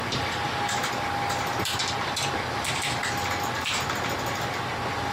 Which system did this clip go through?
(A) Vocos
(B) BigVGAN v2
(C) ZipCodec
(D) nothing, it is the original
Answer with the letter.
D